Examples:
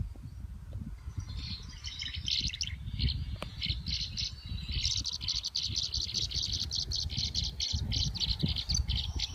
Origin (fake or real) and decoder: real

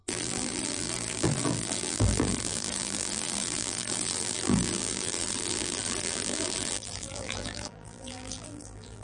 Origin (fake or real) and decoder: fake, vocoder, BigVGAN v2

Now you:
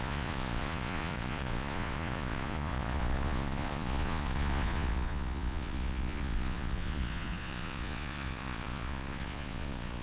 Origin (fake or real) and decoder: fake, vocoder, Vocos